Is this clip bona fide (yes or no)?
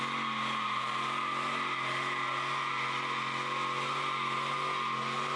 yes